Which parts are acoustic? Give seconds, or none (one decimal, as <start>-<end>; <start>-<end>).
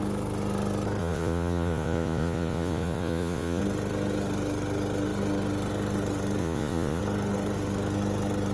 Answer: 0.0-1.0; 3.6-6.4; 7.0-8.5